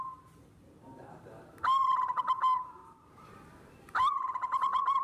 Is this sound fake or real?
fake